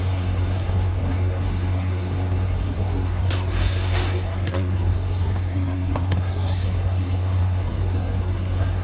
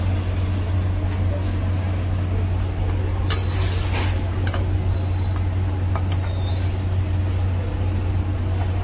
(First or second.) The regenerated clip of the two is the first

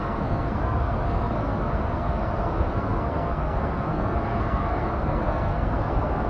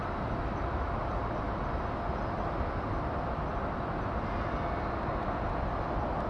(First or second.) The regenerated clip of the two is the first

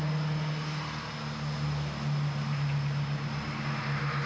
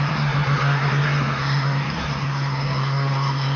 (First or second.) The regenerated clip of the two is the second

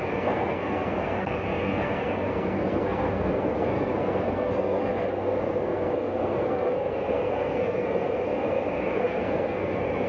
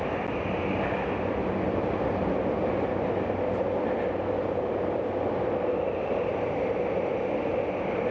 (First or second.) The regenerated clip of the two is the first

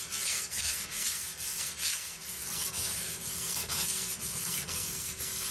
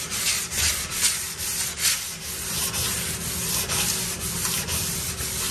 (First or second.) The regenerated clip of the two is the first